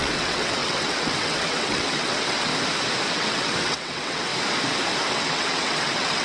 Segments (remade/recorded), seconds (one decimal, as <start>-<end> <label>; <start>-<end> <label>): 0.0-2.5 remade; 2.5-3.1 recorded; 3.1-4.3 remade; 4.3-5.1 recorded; 5.1-6.2 remade